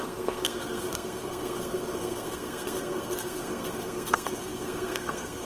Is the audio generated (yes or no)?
yes